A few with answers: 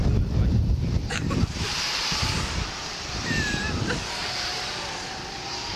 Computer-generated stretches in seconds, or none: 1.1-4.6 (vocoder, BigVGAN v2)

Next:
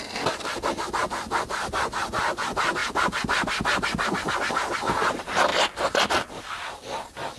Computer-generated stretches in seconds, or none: none

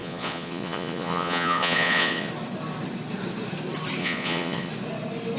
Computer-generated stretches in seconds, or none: 0.0-2.3 (vocoder, Vocos); 4.0-4.7

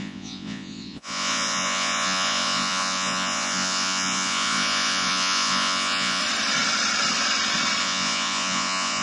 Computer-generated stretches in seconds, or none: 0.0-6.2 (vocoder, Vocos); 7.8-9.0

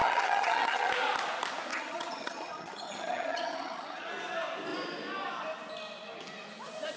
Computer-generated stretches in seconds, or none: 0.0-0.9 (vocoder, HiFi-GAN); 1.7-4.1

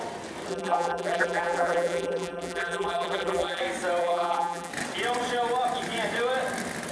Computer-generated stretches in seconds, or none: 0.5-3.6 (vocoder, BigVGAN v2); 4.0-4.7

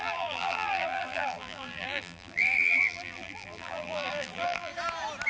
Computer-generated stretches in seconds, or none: 0.0-4.7 (vocoder, BigVGAN v2)